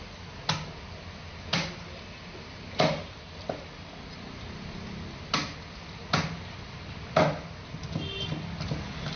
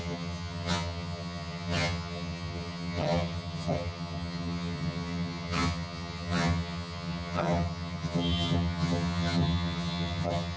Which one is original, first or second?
first